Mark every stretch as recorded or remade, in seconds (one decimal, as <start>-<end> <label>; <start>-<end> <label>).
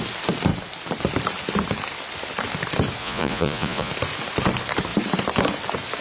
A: 0.0-3.0 recorded; 3.0-3.9 remade; 3.9-6.0 recorded